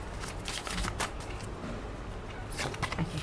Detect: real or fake real